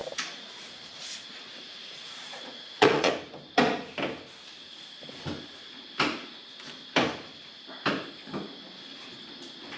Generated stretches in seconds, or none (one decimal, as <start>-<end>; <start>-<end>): 0.0-3.1